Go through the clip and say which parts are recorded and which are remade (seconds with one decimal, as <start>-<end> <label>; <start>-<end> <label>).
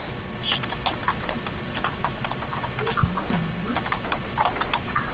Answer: 0.0-5.1 recorded